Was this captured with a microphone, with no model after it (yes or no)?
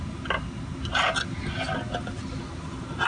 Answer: yes